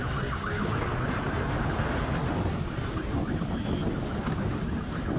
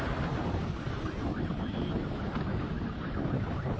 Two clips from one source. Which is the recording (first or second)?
first